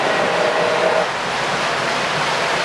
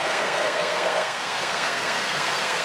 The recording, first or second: first